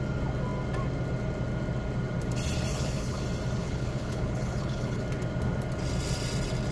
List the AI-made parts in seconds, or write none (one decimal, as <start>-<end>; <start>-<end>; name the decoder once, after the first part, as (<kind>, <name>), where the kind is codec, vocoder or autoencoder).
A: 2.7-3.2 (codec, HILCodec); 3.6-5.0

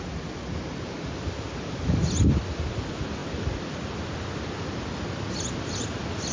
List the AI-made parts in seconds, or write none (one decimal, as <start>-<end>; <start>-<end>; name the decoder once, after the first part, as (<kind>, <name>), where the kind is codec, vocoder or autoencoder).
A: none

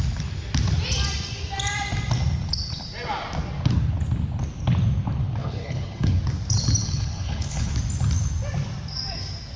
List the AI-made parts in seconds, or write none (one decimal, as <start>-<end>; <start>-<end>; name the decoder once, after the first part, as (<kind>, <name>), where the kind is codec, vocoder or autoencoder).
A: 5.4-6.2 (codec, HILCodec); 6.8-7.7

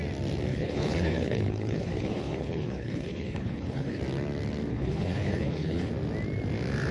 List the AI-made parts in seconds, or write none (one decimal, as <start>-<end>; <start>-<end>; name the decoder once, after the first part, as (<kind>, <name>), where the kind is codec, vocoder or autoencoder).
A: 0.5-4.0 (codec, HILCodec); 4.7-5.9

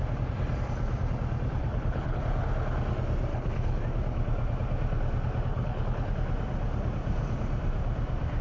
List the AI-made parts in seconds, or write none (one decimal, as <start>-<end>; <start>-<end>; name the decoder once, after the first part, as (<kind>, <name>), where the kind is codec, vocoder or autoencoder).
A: 1.6-2.2 (codec, HILCodec); 3.3-3.8; 5.5-6.1